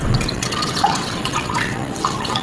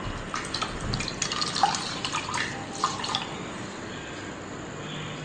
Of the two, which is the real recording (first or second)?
second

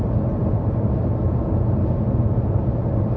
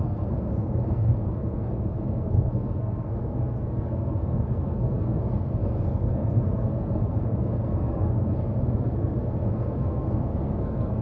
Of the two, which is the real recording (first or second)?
first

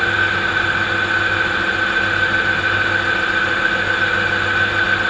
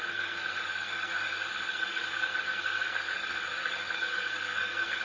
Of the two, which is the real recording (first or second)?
first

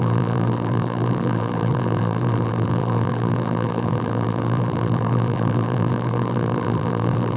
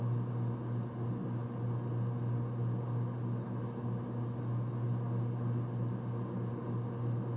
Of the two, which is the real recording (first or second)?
second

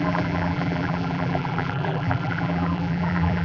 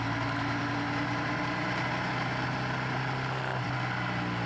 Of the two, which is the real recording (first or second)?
second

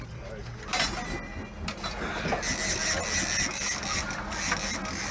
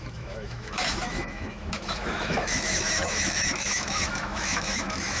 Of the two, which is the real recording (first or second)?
first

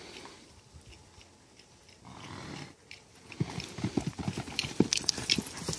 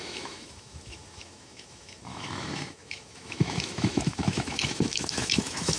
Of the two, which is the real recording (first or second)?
first